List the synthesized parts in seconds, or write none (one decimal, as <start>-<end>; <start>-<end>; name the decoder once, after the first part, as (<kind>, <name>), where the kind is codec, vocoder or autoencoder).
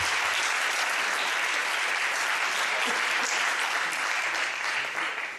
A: none